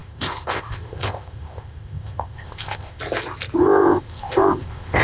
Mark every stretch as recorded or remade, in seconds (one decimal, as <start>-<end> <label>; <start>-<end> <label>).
0.0-3.0 remade; 3.0-3.6 recorded; 3.6-5.0 remade